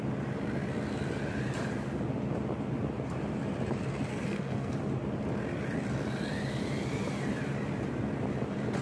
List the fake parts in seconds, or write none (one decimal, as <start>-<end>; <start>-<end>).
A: 4.1-4.7